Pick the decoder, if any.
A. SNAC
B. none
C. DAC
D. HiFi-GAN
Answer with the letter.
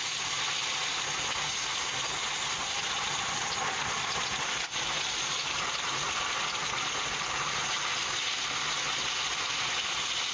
B